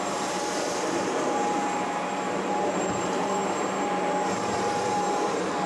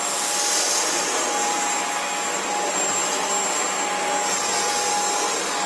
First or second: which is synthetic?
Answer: first